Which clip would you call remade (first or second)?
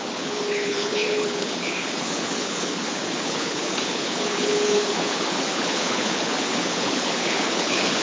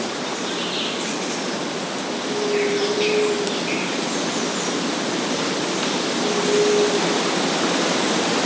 first